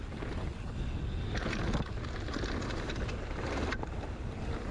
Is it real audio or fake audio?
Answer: real